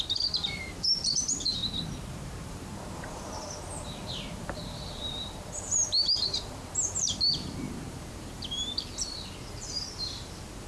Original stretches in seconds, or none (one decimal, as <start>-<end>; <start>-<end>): 1.6-2.1